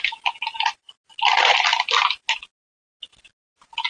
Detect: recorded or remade recorded